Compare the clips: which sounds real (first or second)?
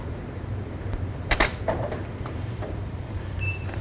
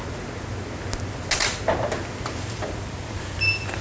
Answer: second